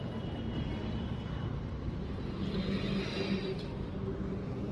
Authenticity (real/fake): real